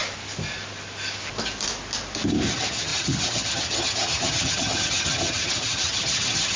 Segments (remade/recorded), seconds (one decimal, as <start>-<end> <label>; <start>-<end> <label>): 0.0-2.5 recorded; 2.5-6.6 remade